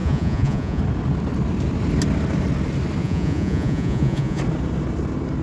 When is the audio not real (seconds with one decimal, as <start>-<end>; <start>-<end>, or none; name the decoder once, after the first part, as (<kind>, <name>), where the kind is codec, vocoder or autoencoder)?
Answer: 0.0-0.8 (vocoder, Vocos); 3.0-4.4